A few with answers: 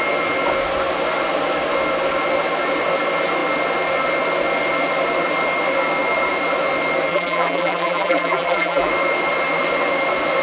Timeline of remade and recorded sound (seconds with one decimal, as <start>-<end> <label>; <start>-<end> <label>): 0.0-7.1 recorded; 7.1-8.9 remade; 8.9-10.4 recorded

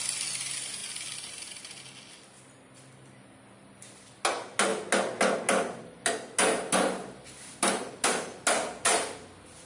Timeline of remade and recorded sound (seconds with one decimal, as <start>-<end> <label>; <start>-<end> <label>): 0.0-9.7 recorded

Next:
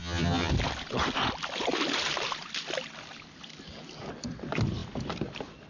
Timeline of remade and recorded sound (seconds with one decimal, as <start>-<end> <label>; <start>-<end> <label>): 0.0-0.5 remade; 0.5-5.7 recorded